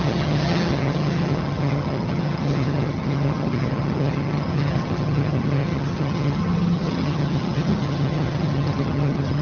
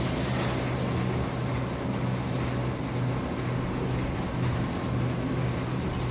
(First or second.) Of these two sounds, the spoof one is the first